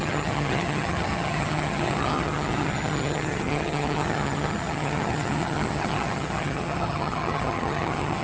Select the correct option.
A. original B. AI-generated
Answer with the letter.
B